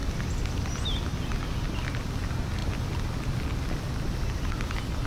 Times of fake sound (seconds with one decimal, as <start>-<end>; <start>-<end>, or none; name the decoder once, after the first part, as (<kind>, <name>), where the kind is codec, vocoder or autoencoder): none